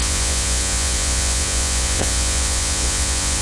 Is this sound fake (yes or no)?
yes